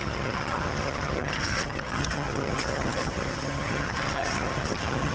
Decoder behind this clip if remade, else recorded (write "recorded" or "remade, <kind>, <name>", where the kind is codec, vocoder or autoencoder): remade, vocoder, HiFi-GAN